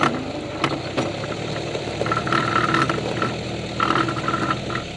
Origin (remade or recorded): recorded